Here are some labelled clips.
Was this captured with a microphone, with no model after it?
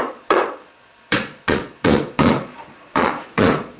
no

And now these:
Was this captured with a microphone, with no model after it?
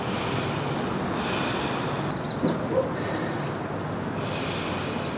yes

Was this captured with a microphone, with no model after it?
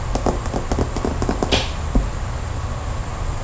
yes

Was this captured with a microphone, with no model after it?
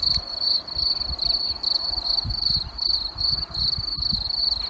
yes